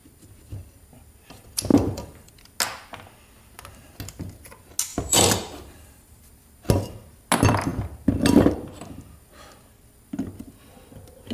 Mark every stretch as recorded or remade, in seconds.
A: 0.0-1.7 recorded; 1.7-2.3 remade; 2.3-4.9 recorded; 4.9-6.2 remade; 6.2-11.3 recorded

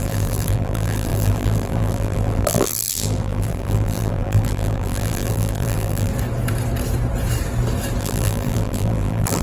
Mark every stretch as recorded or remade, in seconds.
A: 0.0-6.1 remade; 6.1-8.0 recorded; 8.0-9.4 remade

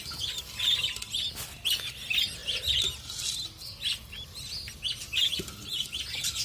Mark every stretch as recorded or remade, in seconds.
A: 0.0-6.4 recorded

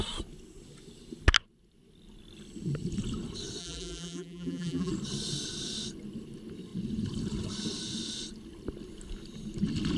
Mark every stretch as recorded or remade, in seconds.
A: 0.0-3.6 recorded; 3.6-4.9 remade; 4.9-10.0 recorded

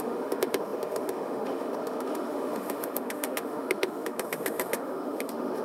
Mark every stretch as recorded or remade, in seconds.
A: 0.0-5.6 remade

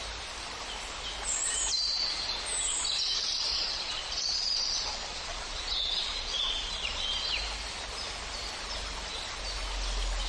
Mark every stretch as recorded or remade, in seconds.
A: 0.0-3.5 recorded; 3.5-7.3 remade; 7.3-10.3 recorded

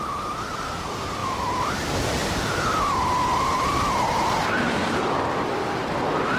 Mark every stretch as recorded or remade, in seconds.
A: 0.0-2.2 recorded; 2.2-6.0 remade; 6.0-6.4 recorded